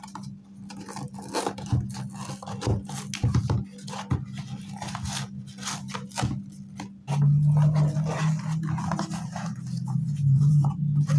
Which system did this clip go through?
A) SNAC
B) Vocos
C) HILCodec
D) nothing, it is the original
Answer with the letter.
D